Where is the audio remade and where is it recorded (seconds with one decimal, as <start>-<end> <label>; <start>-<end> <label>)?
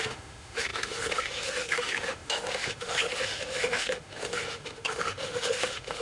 0.0-6.0 remade